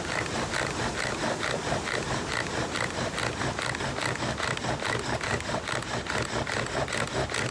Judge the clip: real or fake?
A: real